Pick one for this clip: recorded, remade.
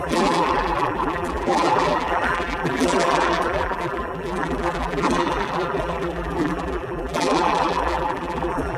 remade